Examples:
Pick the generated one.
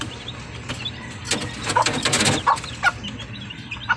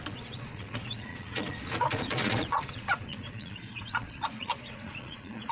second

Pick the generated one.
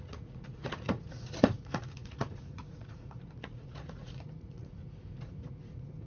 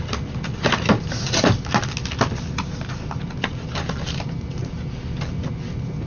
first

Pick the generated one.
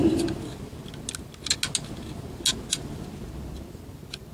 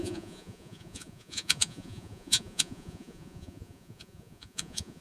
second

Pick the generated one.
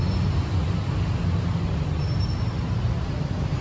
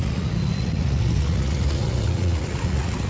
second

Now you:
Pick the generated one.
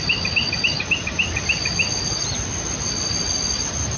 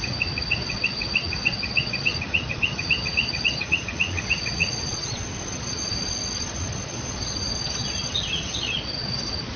second